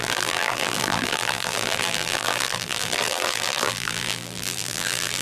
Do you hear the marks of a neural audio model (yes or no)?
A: yes